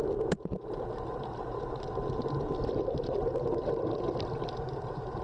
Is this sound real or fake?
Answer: real